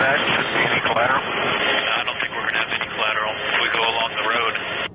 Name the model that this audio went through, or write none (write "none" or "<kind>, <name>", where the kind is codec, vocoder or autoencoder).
none